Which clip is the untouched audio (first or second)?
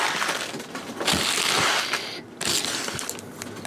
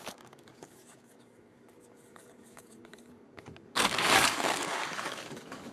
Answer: first